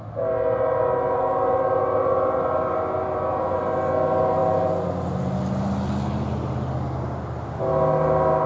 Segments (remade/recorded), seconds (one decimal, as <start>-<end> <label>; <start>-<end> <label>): 0.0-8.5 recorded